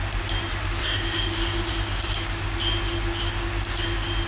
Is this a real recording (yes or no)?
yes